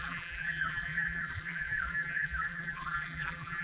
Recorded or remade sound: remade